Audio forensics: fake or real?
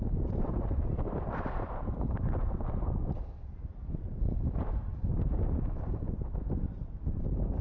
fake